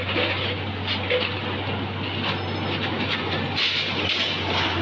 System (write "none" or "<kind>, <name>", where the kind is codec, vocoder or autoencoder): none